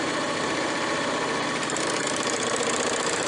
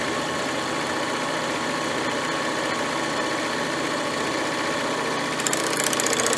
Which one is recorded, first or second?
second